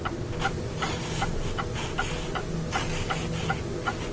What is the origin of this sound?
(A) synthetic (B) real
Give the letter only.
B